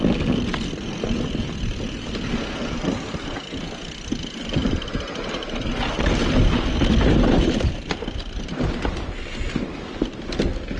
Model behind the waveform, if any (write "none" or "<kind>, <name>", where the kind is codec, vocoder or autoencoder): none